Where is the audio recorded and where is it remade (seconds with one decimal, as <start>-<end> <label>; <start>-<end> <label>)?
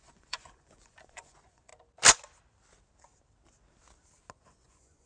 0.0-1.7 remade; 1.7-4.4 recorded; 4.4-5.1 remade